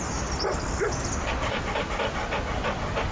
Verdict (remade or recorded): recorded